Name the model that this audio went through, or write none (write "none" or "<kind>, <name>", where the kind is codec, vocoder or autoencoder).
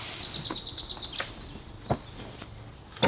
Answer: none